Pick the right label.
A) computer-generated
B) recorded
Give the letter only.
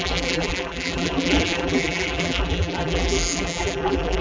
A